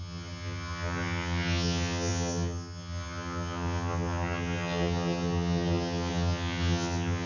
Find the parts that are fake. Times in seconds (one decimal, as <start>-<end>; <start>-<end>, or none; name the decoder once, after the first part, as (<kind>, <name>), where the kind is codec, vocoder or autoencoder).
0.0-7.3 (vocoder, HiFi-GAN)